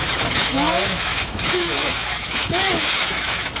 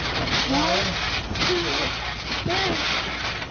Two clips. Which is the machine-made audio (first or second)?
first